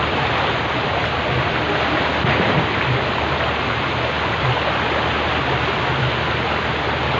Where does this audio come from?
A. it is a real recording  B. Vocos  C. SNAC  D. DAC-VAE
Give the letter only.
A